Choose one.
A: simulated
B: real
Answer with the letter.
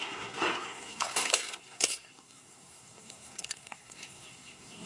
A